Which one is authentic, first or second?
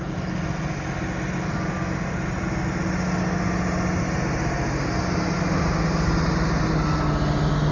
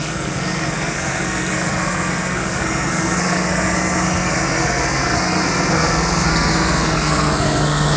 first